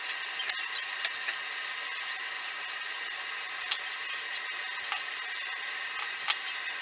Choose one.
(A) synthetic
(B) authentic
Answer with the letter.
B